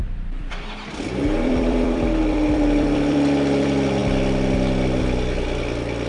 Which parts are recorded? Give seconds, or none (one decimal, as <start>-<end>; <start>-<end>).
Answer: 4.0-6.1